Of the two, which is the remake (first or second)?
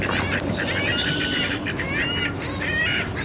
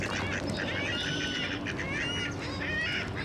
first